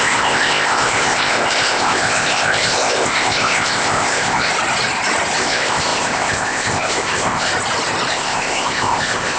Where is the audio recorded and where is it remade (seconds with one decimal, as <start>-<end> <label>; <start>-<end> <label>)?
0.0-4.5 remade; 4.5-5.4 recorded; 5.4-7.5 remade; 7.5-8.1 recorded; 8.1-9.4 remade